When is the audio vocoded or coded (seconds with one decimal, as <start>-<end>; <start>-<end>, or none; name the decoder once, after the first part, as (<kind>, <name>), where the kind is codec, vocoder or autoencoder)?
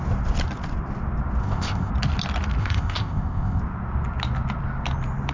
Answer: 1.4-1.9 (codec, ZipCodec); 2.6-3.6